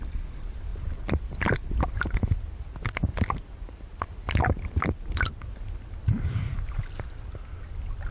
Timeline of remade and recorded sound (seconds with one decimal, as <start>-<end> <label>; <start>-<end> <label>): 0.0-0.7 recorded; 0.7-2.5 remade; 2.5-8.1 recorded